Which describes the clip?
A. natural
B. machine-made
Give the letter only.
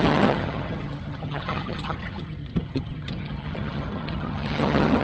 B